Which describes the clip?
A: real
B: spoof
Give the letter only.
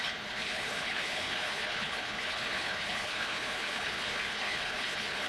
B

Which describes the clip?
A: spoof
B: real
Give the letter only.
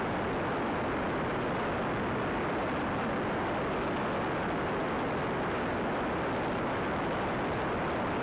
B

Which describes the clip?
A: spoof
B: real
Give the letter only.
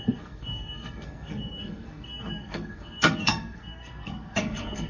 A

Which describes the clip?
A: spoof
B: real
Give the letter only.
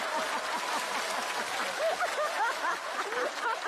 B